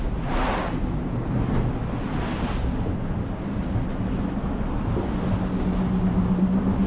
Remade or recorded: recorded